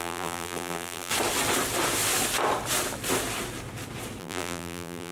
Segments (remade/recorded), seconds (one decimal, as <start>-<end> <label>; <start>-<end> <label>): 0.0-1.1 remade; 1.1-4.2 recorded; 4.2-5.1 remade